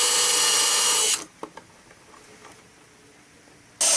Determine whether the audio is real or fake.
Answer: real